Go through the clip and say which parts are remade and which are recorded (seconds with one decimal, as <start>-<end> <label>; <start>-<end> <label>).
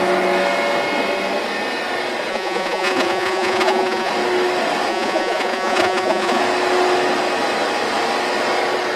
0.0-2.3 recorded; 2.3-4.1 remade; 4.1-4.9 recorded; 4.9-6.4 remade; 6.4-9.0 recorded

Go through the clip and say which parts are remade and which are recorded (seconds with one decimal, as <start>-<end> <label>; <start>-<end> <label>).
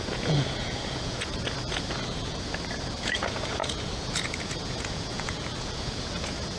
0.0-6.6 remade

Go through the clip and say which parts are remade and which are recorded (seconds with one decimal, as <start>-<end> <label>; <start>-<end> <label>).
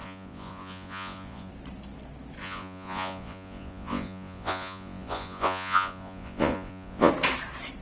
0.0-1.5 remade; 1.5-2.4 recorded; 2.4-7.1 remade; 7.1-7.8 recorded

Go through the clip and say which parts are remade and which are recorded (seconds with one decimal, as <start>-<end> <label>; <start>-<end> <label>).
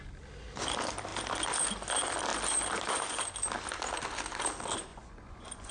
0.0-4.9 recorded; 4.9-5.7 remade